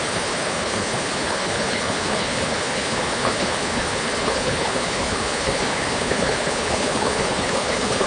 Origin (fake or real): fake